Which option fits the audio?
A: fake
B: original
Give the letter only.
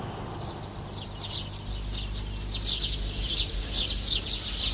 B